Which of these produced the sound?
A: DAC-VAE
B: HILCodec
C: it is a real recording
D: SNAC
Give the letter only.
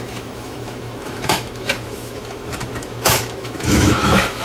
A